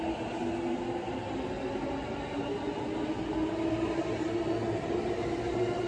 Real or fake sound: real